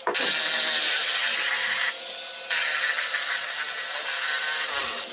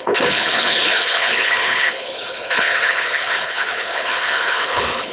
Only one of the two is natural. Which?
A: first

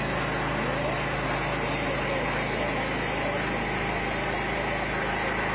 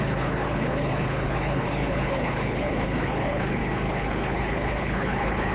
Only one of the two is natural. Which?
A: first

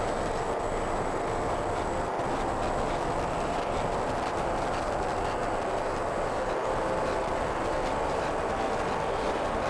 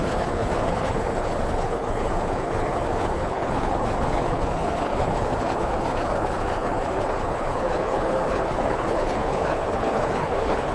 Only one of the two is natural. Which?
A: first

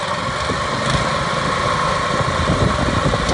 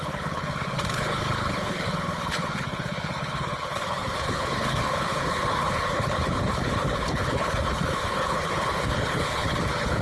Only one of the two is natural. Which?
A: first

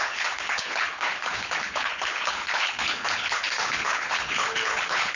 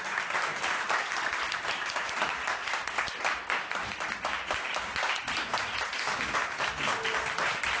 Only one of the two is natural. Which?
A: second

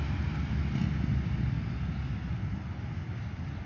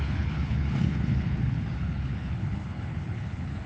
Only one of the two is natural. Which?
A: first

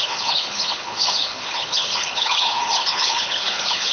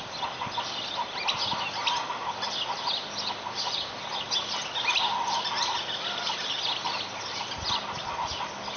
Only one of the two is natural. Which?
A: second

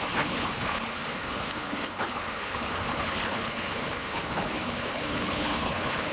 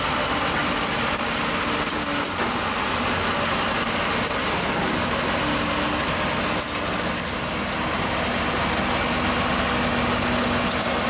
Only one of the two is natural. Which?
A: second